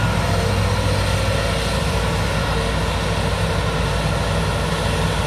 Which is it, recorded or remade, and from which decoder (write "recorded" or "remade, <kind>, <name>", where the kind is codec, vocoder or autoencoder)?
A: recorded